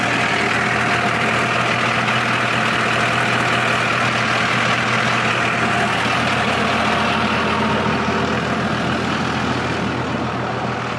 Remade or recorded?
recorded